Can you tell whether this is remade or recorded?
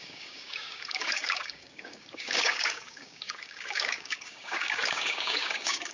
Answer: remade